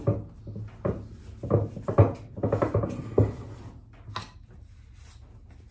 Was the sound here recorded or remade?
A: recorded